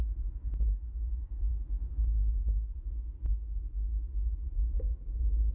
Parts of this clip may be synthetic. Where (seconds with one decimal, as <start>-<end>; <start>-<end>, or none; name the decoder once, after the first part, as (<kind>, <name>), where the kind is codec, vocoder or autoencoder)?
0.0-1.5 (vocoder, BigVGAN v2); 4.8-5.5